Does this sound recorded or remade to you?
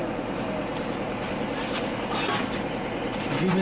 recorded